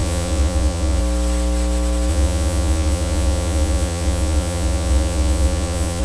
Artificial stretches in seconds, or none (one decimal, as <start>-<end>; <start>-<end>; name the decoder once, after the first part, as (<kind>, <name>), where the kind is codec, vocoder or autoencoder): 0.0-1.0 (vocoder, Vocos); 2.1-6.0